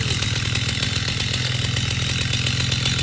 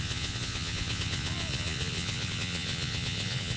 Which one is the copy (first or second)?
second